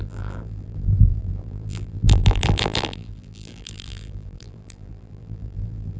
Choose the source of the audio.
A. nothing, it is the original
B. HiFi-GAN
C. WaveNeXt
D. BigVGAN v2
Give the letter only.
D